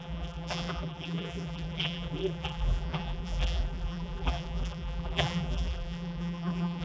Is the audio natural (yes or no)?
no